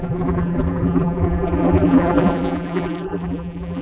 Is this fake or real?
fake